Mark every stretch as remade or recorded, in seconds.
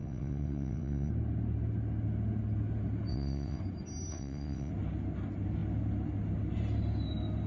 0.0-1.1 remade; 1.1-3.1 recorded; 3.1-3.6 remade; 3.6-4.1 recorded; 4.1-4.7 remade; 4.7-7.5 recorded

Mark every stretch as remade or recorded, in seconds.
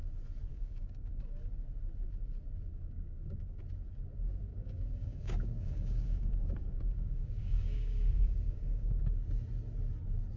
0.0-0.5 recorded; 0.5-1.2 remade; 1.2-2.7 recorded; 2.7-3.6 remade; 3.6-4.5 recorded; 4.5-9.0 remade; 9.0-10.4 recorded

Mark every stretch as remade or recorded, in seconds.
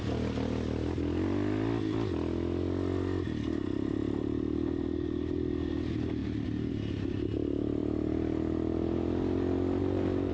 0.0-10.3 recorded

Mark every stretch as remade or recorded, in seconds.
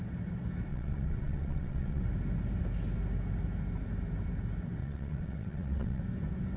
0.0-0.7 recorded; 0.7-2.0 remade; 2.0-4.8 recorded; 4.8-6.0 remade; 6.0-6.6 recorded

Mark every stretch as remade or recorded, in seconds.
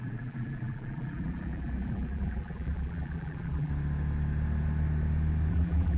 0.0-3.7 remade; 3.7-5.5 recorded; 5.5-6.0 remade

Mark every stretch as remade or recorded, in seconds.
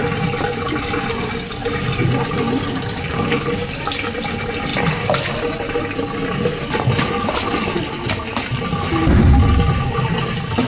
0.0-10.7 recorded